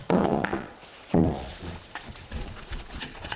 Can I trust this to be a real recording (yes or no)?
no